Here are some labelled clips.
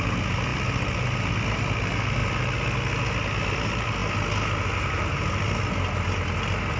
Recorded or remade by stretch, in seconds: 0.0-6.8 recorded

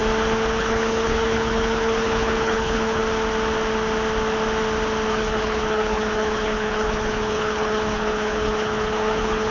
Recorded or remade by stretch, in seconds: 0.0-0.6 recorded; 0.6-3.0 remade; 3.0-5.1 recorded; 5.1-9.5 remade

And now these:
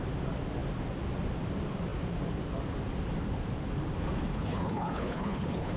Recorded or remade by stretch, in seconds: 0.0-4.3 recorded; 4.3-5.8 remade

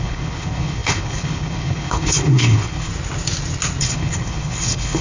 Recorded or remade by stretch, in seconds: 0.0-2.9 remade; 2.9-3.8 recorded; 3.8-5.0 remade

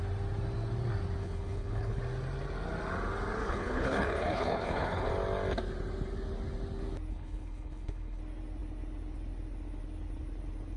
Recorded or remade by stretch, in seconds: 0.0-1.2 recorded; 1.2-2.0 remade; 2.0-3.4 recorded; 3.4-5.1 remade; 5.1-7.1 recorded; 7.1-8.2 remade; 8.2-10.8 recorded

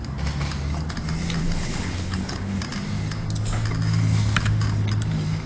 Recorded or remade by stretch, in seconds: 0.0-1.4 recorded; 1.4-2.6 remade; 2.6-5.5 recorded

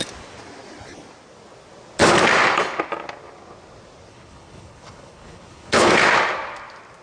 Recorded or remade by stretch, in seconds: 0.0-4.1 recorded; 4.1-5.9 remade; 5.9-7.0 recorded